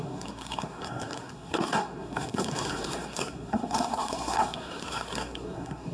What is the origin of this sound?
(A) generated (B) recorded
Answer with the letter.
A